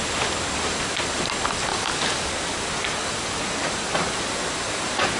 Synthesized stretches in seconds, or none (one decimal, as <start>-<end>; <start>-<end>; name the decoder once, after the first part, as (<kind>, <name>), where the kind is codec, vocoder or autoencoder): none